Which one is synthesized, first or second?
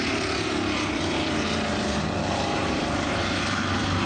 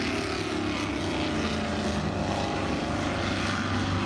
first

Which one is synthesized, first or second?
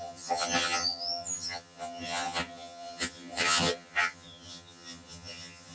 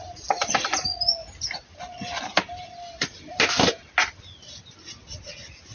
first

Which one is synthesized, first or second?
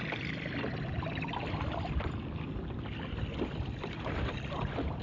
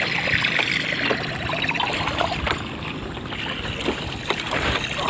first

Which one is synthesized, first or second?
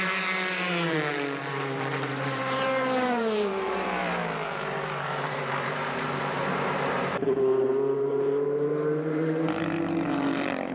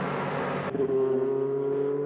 first